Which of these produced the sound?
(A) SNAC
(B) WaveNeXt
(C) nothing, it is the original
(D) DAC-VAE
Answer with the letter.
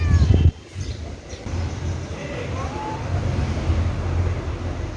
C